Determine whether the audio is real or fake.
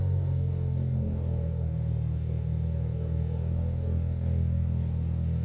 fake